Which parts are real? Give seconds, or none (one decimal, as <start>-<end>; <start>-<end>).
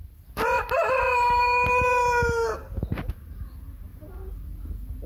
0.0-3.1; 3.9-5.1